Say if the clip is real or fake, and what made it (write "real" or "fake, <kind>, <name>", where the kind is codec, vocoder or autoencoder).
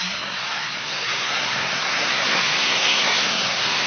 fake, codec, SNAC